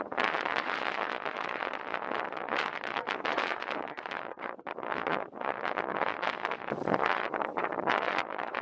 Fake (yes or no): yes